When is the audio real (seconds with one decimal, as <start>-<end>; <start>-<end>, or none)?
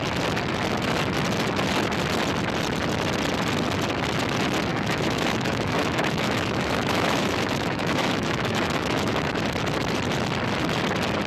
0.0-4.7; 9.3-11.3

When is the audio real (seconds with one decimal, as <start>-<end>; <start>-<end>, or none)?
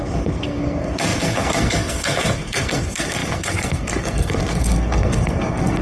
none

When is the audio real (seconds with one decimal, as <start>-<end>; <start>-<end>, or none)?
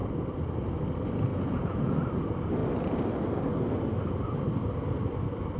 0.0-1.3; 2.0-5.6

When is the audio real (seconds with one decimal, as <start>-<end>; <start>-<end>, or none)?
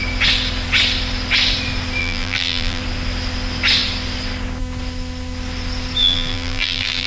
0.0-2.0; 2.8-6.0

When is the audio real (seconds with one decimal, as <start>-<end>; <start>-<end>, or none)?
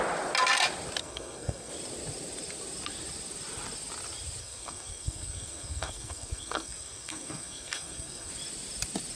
0.0-1.0; 1.7-4.4; 8.3-9.2